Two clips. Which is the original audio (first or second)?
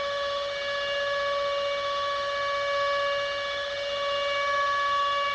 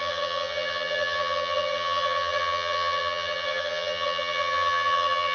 first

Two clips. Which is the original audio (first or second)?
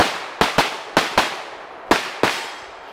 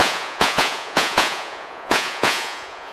first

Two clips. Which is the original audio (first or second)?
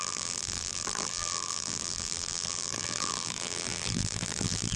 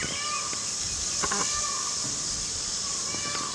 second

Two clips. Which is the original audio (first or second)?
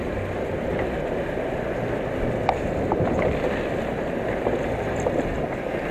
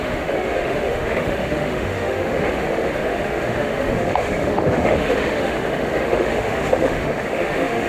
first